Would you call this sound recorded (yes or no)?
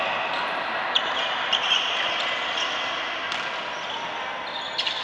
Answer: yes